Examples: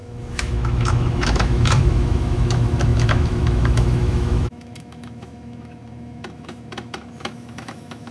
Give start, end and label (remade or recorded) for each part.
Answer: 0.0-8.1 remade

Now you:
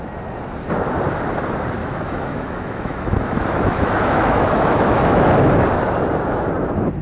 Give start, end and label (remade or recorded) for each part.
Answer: 0.0-1.8 recorded; 1.8-5.3 remade; 5.3-7.0 recorded